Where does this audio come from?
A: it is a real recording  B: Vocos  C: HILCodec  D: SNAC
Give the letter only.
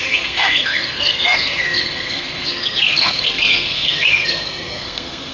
D